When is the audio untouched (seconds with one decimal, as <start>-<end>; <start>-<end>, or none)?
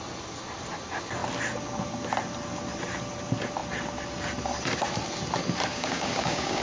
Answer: 0.0-5.7